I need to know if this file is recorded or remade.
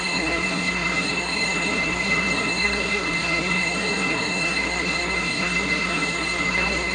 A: remade